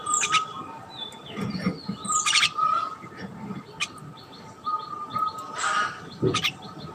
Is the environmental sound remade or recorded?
recorded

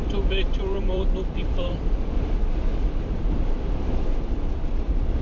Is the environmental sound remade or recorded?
remade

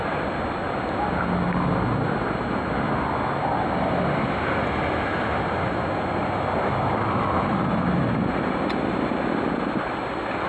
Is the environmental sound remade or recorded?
recorded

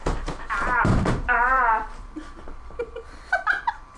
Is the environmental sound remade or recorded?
remade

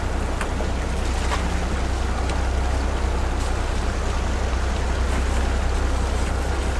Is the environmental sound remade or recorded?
recorded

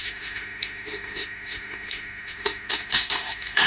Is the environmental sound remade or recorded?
remade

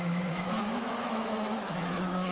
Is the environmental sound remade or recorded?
remade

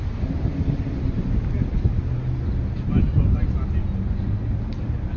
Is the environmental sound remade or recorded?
recorded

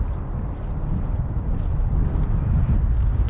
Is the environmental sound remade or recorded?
remade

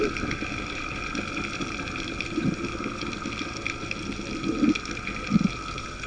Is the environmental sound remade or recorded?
recorded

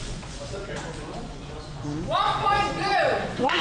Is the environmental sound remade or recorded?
remade